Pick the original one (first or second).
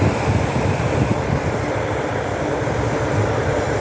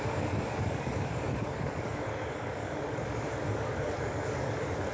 first